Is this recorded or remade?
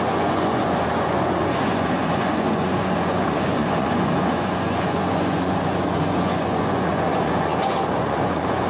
remade